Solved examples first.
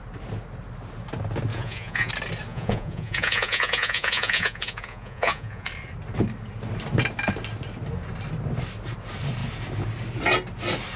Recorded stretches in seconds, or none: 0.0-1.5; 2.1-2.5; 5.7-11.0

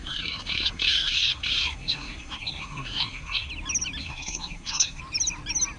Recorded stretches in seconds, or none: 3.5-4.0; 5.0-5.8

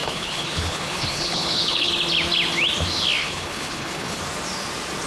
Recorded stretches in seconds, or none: 1.9-3.2; 4.2-5.1